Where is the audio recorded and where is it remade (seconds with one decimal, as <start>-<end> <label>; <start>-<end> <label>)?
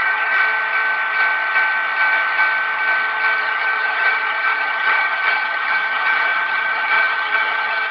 0.0-0.4 remade; 0.4-3.4 recorded; 3.4-7.9 remade